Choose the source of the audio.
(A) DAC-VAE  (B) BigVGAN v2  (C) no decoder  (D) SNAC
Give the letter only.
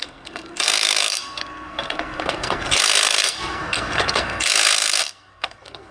D